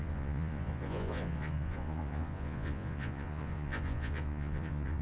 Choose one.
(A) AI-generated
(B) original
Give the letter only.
A